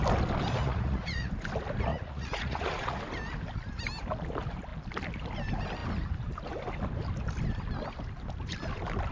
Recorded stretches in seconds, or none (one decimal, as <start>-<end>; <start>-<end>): 0.0-0.6; 1.3-1.9; 3.0-9.1